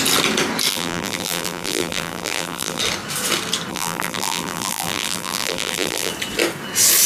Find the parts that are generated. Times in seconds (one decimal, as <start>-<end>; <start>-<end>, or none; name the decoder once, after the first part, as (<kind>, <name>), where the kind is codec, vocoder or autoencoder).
0.7-2.8 (vocoder, BigVGAN v2); 3.7-6.1